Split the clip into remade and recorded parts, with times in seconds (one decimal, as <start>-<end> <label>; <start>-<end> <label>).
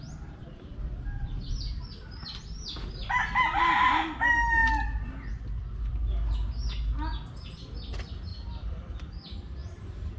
0.0-0.4 recorded; 0.4-1.9 remade; 1.9-8.3 recorded; 8.3-9.1 remade; 9.1-9.6 recorded; 9.6-10.2 remade